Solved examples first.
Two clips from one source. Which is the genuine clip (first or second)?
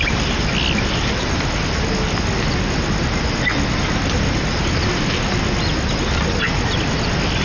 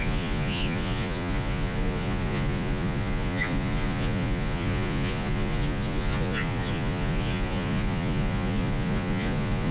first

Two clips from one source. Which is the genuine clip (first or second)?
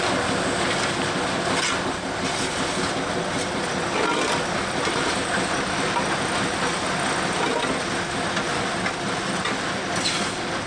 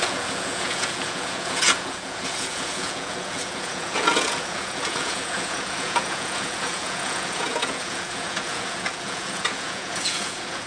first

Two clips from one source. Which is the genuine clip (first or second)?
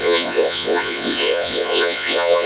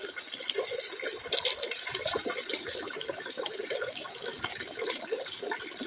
second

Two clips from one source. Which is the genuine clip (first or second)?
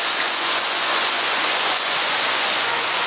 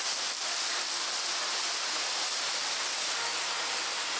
second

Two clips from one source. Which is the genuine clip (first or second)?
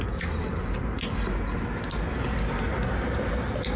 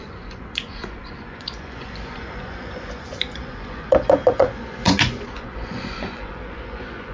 first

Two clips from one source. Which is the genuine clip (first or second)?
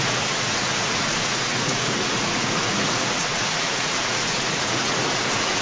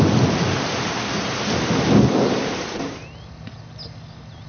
second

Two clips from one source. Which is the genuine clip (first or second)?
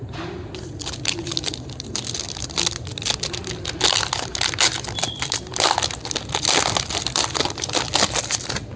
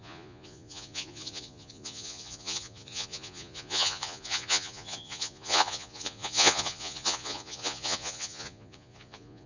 first